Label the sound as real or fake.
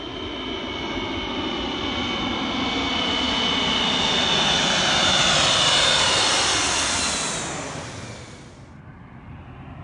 real